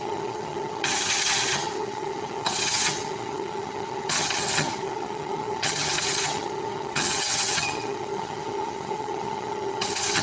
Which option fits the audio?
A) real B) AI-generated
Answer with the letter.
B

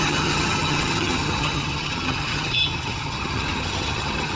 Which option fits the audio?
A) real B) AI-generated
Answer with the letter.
B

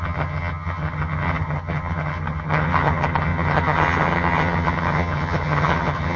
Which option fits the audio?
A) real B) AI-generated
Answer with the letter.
B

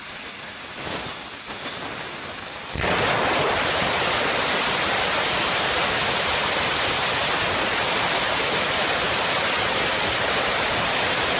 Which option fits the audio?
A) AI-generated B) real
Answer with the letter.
B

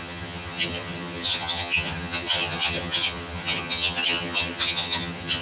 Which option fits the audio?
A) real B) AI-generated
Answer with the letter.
B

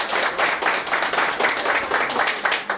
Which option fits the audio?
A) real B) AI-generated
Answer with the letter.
A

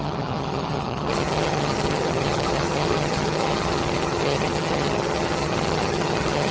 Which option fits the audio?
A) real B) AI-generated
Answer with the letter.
B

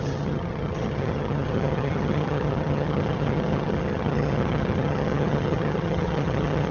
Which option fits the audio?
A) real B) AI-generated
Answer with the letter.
B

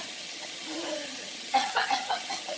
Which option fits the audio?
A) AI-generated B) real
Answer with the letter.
A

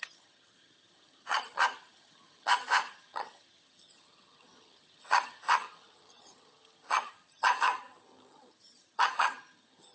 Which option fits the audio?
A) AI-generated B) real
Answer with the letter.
A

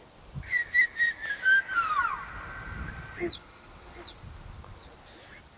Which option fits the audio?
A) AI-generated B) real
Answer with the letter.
B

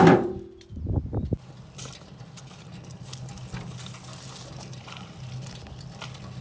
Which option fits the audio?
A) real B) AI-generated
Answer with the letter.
A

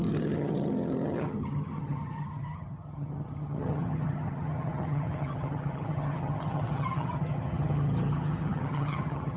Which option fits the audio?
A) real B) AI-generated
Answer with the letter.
B